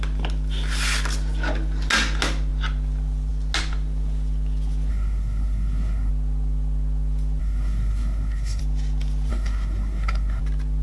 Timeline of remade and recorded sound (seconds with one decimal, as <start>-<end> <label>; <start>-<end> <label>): 0.0-4.9 recorded; 4.9-6.1 remade; 6.1-7.4 recorded; 7.4-8.6 remade; 8.6-9.3 recorded; 9.3-10.4 remade; 10.4-10.8 recorded